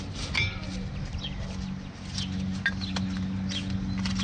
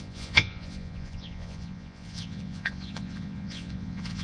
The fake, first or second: second